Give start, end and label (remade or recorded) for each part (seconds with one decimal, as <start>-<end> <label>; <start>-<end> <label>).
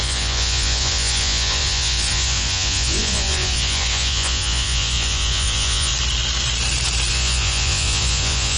0.0-5.9 remade; 5.9-7.1 recorded; 7.1-8.6 remade